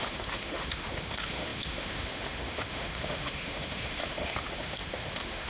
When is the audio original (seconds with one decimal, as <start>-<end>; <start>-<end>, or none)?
none